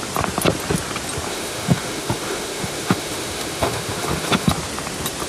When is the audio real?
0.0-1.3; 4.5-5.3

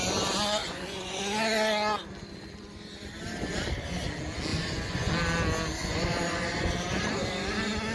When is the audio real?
0.0-0.6; 1.2-4.5; 5.1-5.8; 6.7-7.9

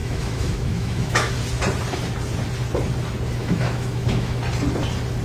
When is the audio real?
1.3-3.4; 4.4-5.2

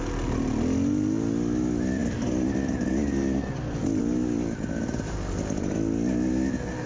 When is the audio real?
0.0-6.9